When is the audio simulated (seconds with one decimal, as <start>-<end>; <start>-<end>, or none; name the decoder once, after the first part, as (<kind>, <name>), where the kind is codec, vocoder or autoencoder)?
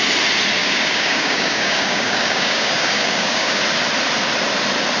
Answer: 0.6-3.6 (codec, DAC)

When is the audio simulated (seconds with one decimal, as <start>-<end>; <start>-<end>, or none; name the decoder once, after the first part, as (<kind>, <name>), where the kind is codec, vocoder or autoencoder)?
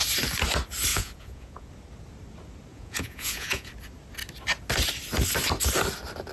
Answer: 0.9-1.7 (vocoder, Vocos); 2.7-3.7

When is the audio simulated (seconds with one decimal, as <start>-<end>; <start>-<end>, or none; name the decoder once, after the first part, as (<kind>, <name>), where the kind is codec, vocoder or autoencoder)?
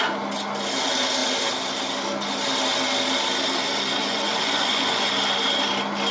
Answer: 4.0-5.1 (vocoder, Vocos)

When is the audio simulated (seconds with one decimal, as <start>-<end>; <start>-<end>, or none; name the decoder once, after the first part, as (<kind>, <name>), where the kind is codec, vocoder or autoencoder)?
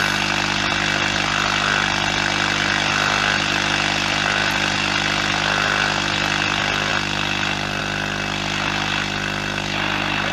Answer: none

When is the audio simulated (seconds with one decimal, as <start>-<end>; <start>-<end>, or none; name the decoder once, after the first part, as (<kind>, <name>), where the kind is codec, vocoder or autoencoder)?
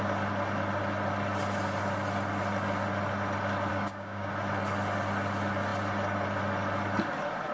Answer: 3.7-4.3 (codec, DAC)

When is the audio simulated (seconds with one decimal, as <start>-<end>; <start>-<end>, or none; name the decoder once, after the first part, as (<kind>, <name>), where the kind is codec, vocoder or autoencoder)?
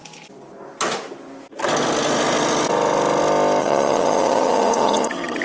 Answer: 3.6-5.4 (vocoder, HiFi-GAN)